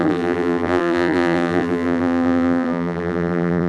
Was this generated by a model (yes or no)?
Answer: yes